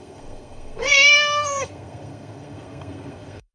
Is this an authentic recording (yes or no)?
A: no